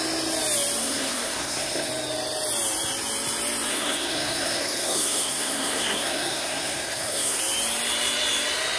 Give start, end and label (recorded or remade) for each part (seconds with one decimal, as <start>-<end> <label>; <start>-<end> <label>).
0.0-0.8 recorded; 0.8-1.9 remade; 1.9-3.7 recorded; 3.7-7.4 remade; 7.4-8.8 recorded